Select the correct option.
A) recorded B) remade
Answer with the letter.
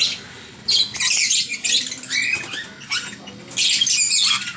A